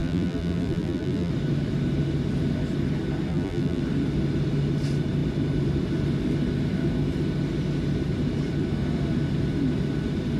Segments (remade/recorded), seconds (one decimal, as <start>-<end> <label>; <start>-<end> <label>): 0.0-1.3 remade; 1.3-3.3 recorded; 3.3-3.8 remade; 3.8-10.4 recorded

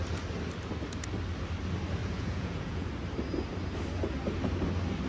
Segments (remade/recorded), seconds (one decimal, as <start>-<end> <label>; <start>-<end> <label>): 0.0-2.0 recorded; 2.0-2.9 remade; 2.9-5.1 recorded